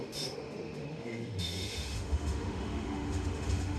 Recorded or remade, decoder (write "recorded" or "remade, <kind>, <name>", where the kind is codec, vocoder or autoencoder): remade, autoencoder, DAC-VAE